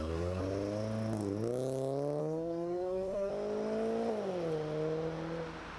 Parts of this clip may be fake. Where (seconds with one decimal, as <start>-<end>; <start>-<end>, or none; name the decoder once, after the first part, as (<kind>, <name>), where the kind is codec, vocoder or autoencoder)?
0.0-0.4 (codec, SNAC); 2.2-3.3